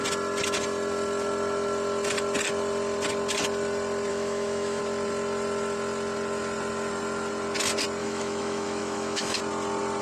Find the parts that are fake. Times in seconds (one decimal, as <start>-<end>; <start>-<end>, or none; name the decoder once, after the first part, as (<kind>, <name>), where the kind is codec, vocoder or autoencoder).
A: 4.1-4.8 (autoencoder, DAC-VAE); 8.0-9.4